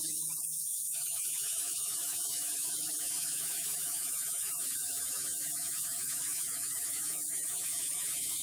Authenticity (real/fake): fake